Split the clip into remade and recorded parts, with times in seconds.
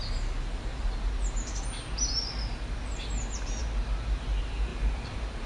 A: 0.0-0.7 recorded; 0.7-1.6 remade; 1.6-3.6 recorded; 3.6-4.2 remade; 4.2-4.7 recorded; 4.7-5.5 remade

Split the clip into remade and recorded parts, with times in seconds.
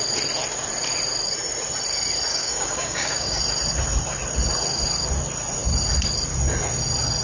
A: 0.0-2.3 recorded; 2.3-3.4 remade; 3.4-7.2 recorded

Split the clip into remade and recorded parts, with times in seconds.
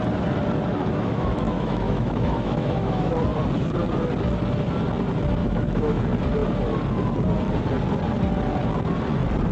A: 0.0-0.7 recorded; 0.7-3.1 remade; 3.1-5.4 recorded; 5.4-6.0 remade; 6.0-9.5 recorded